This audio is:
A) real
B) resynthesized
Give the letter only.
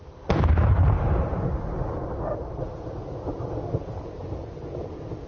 A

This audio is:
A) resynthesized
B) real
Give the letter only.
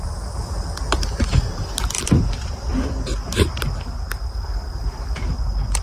B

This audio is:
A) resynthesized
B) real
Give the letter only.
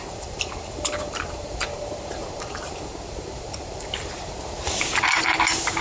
A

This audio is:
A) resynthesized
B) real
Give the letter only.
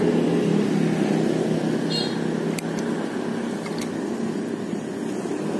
B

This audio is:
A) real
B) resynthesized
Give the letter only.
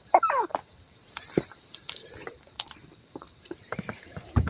B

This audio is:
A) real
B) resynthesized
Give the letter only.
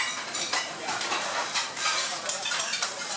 B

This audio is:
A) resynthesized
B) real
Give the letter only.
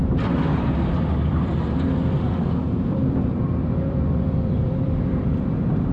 A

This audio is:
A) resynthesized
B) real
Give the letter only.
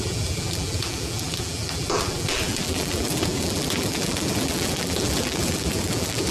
A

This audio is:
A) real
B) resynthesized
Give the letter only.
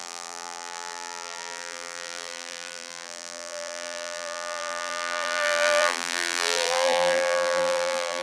B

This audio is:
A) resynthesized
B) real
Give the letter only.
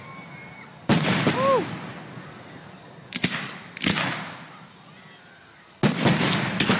B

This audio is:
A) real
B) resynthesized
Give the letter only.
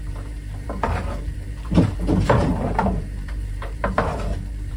B